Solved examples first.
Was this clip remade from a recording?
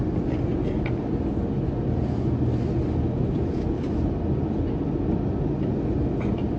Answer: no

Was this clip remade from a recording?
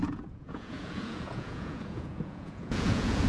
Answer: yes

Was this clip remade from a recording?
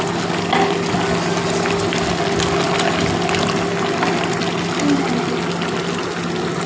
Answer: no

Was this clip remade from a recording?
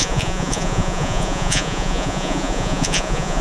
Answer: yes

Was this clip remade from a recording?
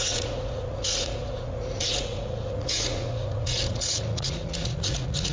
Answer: yes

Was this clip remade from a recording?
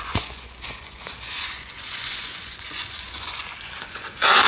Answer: yes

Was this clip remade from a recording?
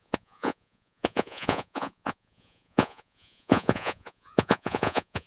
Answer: yes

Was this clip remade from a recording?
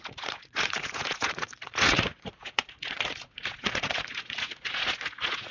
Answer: yes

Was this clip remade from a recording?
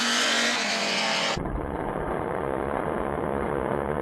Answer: yes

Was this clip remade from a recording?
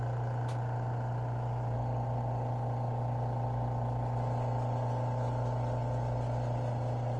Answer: no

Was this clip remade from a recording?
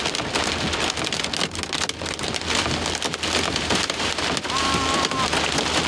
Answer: no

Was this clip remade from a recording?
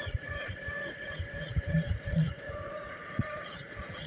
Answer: yes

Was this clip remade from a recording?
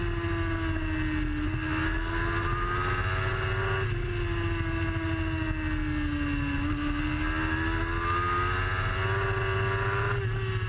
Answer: no